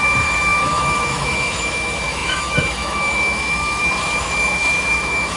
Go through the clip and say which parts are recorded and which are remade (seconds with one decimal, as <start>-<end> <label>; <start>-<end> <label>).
0.0-5.4 remade